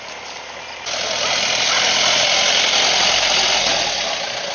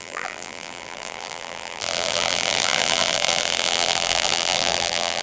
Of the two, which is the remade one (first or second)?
second